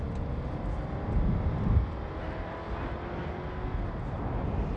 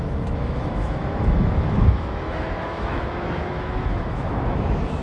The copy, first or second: second